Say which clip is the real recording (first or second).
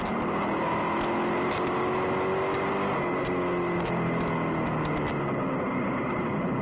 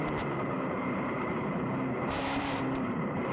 first